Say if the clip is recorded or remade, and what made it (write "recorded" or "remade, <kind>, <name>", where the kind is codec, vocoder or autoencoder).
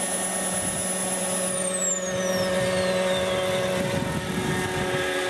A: recorded